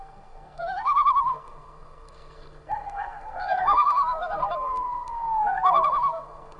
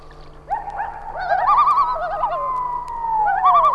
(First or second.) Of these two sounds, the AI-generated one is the first